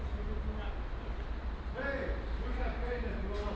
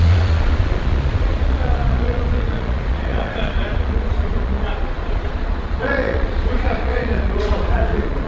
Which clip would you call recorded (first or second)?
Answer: first